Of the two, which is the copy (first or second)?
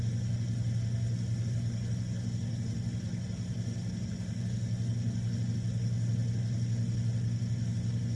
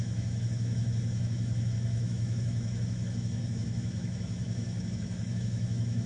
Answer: second